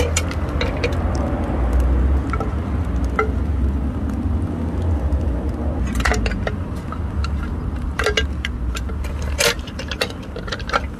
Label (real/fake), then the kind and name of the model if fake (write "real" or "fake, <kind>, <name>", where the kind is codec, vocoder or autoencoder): real